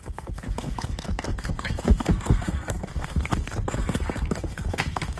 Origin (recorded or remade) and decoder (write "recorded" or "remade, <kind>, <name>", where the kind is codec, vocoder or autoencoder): remade, codec, SNAC